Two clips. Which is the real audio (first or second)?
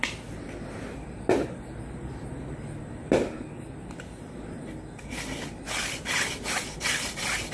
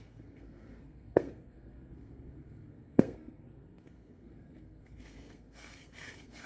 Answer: first